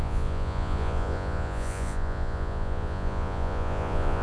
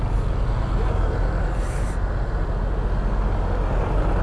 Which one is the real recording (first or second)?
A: second